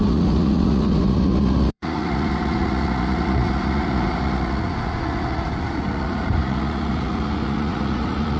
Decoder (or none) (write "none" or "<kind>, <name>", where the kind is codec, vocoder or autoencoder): vocoder, Vocos